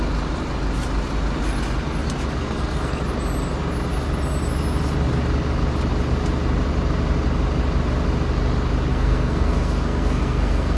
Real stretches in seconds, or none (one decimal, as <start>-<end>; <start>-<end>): 0.0-2.4; 3.0-8.9